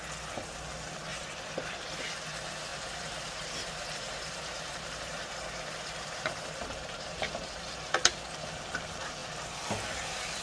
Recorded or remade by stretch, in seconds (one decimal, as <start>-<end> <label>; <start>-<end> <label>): 0.0-1.1 recorded; 1.1-2.0 remade; 2.0-2.7 recorded; 2.7-7.9 remade; 7.9-10.4 recorded